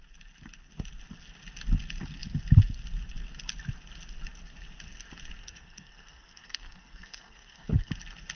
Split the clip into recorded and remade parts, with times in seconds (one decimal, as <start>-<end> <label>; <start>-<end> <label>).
0.0-5.4 recorded; 5.4-7.9 remade; 7.9-8.3 recorded